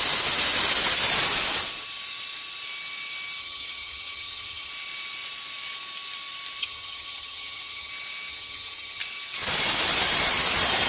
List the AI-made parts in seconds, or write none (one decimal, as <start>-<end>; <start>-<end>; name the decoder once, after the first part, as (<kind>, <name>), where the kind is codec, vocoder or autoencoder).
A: 3.4-4.7 (vocoder, HiFi-GAN); 6.6-7.9; 8.3-9.0